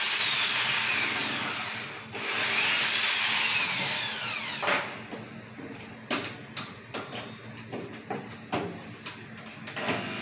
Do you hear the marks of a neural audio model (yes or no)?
no